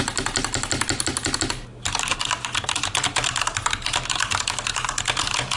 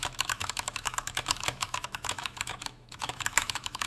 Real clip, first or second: first